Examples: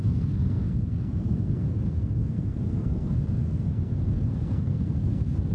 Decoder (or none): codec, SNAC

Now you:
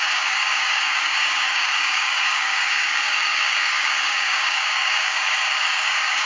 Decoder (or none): codec, DAC